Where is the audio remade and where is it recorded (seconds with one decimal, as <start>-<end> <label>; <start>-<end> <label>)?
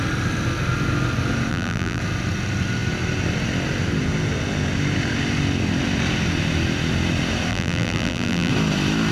0.0-1.5 recorded; 1.5-2.0 remade; 2.0-7.5 recorded; 7.5-8.5 remade; 8.5-9.1 recorded